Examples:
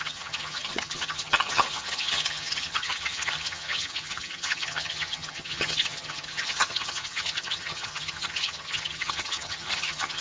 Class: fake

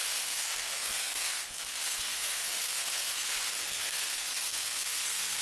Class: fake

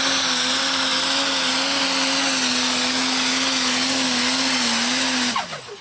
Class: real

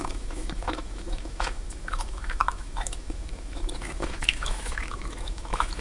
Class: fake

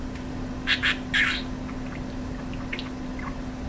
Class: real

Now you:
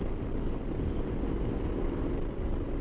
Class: real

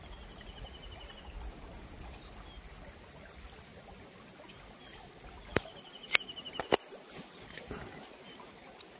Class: real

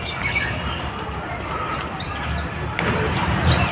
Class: real